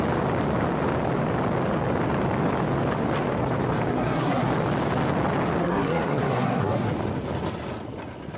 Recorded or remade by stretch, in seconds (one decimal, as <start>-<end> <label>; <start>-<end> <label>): 0.0-3.9 recorded; 3.9-4.5 remade; 4.5-5.6 recorded; 5.6-6.9 remade; 6.9-8.4 recorded